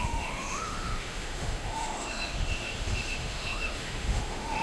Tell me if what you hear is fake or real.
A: fake